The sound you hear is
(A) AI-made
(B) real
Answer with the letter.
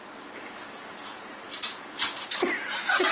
A